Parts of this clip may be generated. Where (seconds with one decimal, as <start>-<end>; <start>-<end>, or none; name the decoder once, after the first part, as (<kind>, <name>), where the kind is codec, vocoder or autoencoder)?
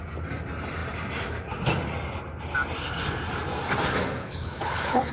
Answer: 4.2-5.1 (codec, HILCodec)